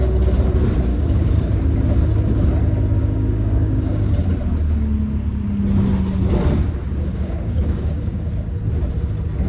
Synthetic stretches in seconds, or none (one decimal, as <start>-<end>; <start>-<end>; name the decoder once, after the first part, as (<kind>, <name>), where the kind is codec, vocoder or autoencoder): 0.9-1.4 (codec, DAC); 3.0-4.1; 7.1-8.3